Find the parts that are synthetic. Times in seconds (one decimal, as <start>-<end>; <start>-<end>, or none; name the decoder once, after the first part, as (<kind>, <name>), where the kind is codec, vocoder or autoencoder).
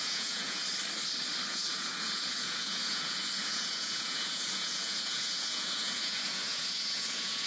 0.0-0.6 (vocoder, Vocos); 1.5-7.5